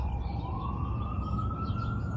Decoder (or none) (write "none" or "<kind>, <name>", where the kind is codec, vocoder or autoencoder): none